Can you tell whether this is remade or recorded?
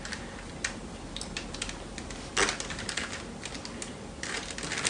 recorded